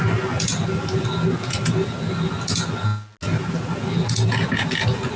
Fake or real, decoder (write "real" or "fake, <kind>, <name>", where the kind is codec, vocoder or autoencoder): real